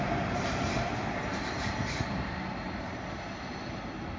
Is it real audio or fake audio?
fake